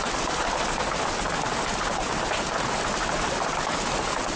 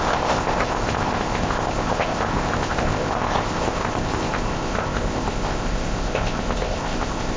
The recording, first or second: first